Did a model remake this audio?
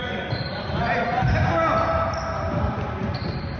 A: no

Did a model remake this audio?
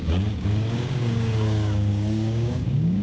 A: yes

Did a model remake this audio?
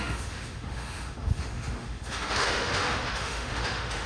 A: yes